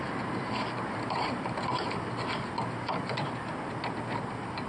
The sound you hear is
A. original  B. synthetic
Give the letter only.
A